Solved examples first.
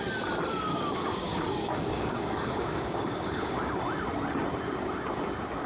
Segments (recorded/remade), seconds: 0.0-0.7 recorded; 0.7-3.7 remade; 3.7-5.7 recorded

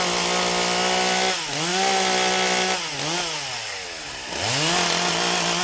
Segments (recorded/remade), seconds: 0.0-5.6 recorded